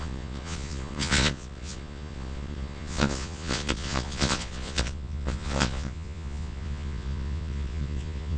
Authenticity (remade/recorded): remade